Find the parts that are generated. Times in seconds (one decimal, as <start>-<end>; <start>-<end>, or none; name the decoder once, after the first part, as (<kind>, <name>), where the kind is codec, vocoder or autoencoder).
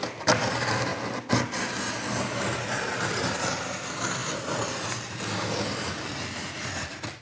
none